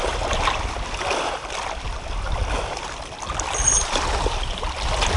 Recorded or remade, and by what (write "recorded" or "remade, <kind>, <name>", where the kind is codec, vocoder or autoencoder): recorded